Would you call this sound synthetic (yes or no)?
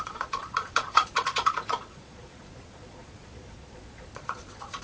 yes